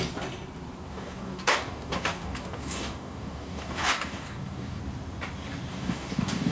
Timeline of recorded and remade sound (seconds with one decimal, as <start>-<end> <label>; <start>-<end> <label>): 0.0-0.9 recorded; 0.9-4.8 remade; 4.8-5.7 recorded; 5.7-6.5 remade